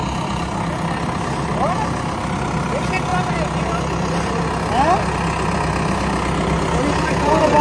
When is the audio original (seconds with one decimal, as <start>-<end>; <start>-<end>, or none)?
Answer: 0.0-7.6